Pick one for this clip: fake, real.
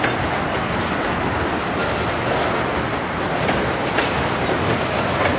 real